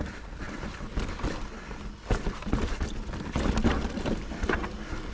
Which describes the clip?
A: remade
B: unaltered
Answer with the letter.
B